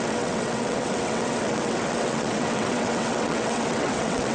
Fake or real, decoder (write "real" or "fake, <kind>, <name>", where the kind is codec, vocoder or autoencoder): fake, vocoder, WaveNeXt